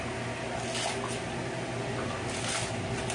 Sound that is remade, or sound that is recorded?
recorded